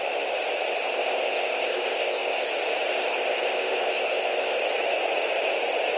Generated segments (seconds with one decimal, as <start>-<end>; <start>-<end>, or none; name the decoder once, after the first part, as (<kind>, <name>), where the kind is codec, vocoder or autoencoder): 0.8-2.5 (codec, ZipCodec); 2.9-4.6